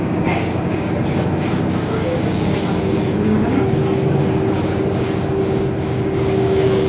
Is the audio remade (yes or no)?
yes